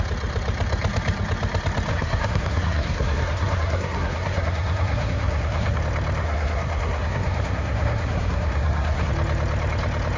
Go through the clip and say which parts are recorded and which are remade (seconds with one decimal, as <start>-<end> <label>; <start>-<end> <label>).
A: 0.0-1.9 recorded; 1.9-5.8 remade; 5.8-6.2 recorded; 6.2-9.1 remade; 9.1-10.2 recorded